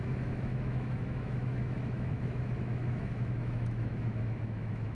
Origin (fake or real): fake